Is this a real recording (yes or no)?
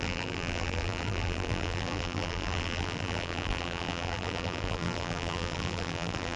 no